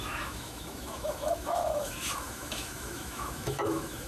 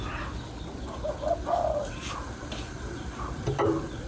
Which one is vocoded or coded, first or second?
first